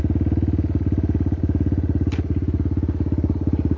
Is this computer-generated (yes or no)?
no